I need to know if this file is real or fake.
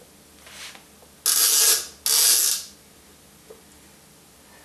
real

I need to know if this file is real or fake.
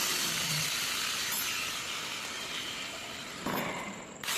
real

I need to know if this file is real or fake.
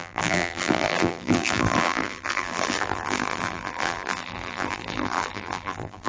fake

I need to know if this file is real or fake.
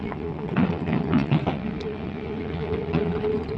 fake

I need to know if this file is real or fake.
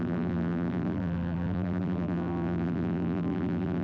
fake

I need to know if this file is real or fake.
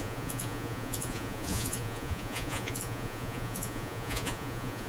fake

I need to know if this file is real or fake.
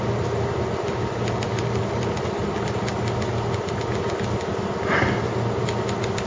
real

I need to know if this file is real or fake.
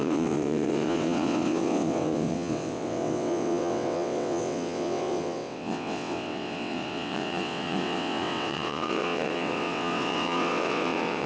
fake